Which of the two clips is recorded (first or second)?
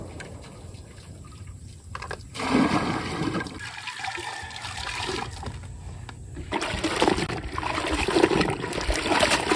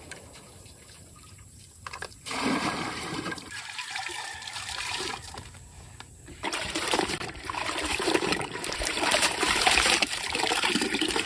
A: first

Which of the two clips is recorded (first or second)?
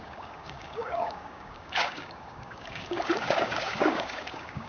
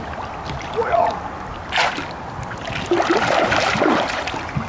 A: second